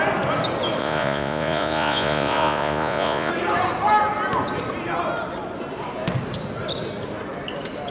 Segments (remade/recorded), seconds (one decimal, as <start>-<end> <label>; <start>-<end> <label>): 0.0-0.8 recorded; 0.8-3.3 remade; 3.3-7.9 recorded